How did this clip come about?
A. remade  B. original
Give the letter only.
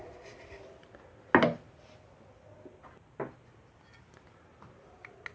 B